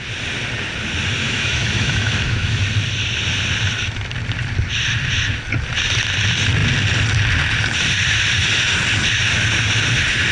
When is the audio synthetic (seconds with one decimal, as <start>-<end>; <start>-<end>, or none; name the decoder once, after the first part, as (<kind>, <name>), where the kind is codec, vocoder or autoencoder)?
1.2-2.6 (autoencoder, DAC-VAE)